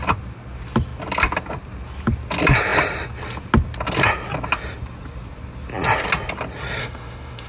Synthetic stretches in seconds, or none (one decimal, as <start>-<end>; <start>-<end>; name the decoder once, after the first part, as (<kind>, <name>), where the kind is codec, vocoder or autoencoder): 6.8-7.5 (autoencoder, DAC-VAE)